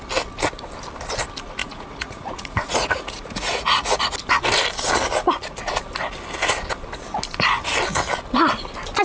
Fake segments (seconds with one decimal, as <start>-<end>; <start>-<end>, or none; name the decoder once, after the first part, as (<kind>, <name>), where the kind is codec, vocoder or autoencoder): 1.6-4.0 (vocoder, Vocos)